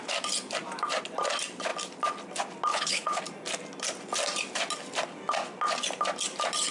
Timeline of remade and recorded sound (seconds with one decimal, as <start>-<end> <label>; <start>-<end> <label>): 0.0-2.7 recorded; 2.7-3.2 remade; 3.2-6.7 recorded